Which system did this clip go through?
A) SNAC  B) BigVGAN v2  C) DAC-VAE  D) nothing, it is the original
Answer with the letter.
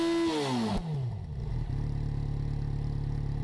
D